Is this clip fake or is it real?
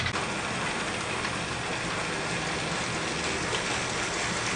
real